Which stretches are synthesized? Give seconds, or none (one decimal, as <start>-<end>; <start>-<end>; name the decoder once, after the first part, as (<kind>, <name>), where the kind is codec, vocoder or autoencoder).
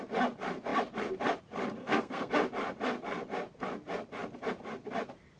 1.8-2.3 (codec, SNAC)